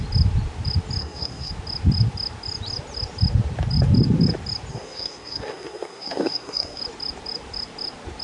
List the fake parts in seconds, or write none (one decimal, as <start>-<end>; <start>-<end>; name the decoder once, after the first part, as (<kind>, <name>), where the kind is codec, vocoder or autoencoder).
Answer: 1.0-1.5 (codec, SNAC); 4.7-6.8